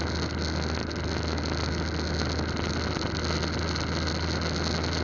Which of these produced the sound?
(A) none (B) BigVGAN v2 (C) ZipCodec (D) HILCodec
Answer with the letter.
A